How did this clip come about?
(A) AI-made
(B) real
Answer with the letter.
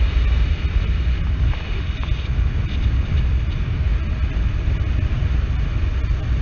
B